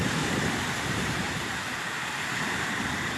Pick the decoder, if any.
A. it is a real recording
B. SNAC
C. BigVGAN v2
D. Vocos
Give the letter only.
C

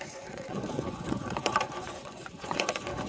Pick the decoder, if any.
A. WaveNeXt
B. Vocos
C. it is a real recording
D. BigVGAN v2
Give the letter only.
B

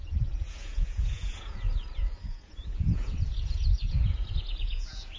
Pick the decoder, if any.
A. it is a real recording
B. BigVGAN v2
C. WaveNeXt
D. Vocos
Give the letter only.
D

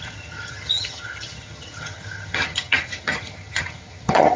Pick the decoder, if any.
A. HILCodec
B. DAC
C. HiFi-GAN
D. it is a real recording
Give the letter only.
C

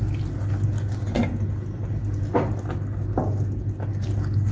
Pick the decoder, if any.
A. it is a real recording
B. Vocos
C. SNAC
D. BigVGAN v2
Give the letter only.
A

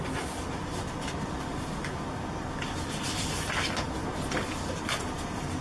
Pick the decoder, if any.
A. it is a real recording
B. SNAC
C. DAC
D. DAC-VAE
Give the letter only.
A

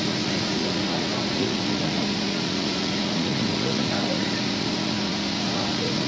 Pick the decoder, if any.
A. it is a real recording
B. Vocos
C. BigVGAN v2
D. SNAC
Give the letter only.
B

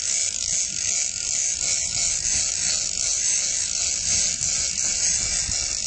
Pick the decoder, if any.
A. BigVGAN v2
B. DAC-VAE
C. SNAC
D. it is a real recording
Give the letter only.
D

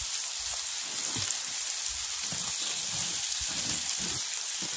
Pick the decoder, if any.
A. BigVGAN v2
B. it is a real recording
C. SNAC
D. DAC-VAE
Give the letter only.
B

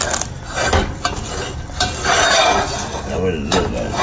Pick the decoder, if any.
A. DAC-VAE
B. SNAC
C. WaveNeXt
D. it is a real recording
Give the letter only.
D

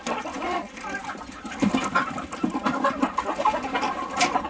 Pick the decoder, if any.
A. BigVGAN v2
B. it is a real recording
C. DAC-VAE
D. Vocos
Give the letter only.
B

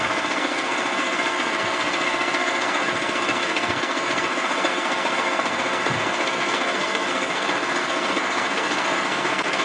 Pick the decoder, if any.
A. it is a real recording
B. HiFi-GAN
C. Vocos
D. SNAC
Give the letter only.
D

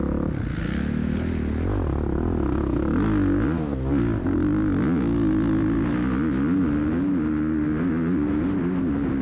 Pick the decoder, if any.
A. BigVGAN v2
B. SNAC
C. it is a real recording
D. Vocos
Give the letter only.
C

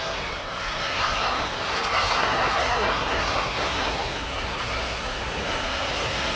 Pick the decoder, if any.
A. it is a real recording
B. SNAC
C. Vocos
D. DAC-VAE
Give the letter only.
B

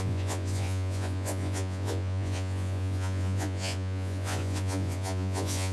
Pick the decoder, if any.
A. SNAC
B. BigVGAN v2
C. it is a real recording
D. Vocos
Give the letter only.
D